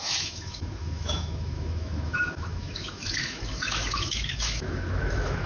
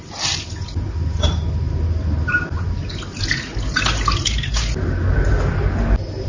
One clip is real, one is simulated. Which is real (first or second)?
second